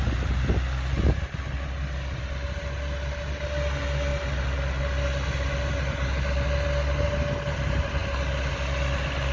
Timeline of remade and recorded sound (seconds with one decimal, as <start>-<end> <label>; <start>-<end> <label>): 0.0-9.3 recorded